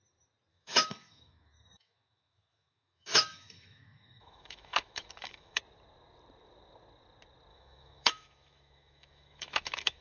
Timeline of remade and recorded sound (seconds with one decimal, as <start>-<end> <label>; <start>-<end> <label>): 0.0-0.5 recorded; 0.5-5.6 remade; 5.6-7.5 recorded; 7.5-10.0 remade